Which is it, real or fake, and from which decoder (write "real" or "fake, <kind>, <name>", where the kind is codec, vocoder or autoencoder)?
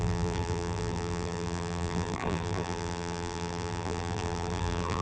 fake, vocoder, BigVGAN v2